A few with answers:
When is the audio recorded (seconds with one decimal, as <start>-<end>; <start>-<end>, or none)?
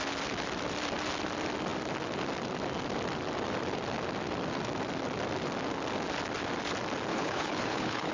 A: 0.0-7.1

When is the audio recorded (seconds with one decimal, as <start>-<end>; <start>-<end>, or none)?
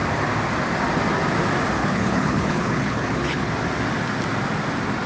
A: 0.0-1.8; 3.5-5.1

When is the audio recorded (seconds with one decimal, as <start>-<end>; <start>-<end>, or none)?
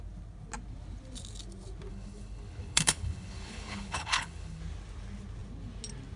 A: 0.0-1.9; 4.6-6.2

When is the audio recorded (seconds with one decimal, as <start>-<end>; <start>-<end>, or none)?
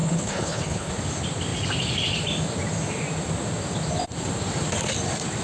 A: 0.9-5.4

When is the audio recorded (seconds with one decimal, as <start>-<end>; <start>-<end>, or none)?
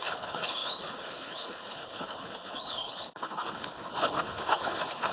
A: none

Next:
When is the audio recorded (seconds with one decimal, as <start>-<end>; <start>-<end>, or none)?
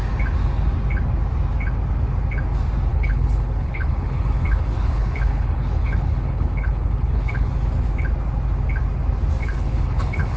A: 0.0-2.9; 7.5-9.4